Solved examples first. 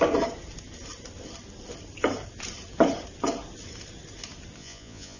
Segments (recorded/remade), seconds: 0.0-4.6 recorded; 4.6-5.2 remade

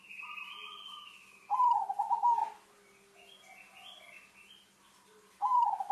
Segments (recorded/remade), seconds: 0.0-5.9 recorded

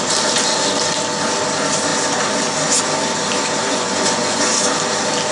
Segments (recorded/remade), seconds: 0.0-3.7 recorded; 3.7-4.5 remade; 4.5-5.3 recorded

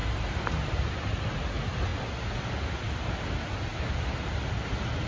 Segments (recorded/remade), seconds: 0.0-5.1 recorded

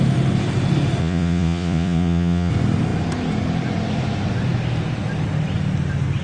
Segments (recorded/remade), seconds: 0.0-1.0 recorded; 1.0-2.5 remade; 2.5-6.2 recorded